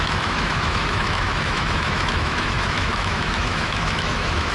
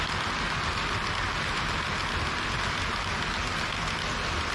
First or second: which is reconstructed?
first